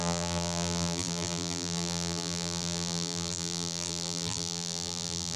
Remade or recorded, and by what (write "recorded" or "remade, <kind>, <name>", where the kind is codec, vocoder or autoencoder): remade, vocoder, BigVGAN v2